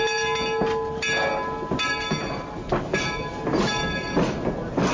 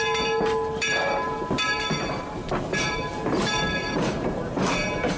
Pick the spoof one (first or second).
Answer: second